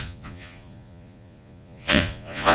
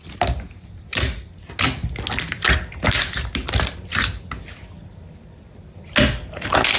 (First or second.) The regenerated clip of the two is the first